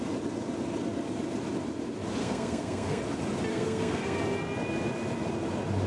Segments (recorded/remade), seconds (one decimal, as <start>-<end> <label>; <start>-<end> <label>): 0.0-2.2 recorded; 2.2-3.0 remade; 3.0-3.5 recorded; 3.5-4.2 remade; 4.2-5.9 recorded